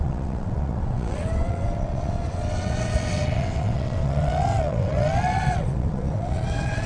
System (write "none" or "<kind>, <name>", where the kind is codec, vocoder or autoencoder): vocoder, WaveNeXt